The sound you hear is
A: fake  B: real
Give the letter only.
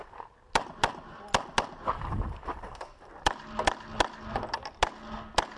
B